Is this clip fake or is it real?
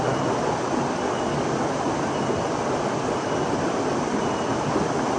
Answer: real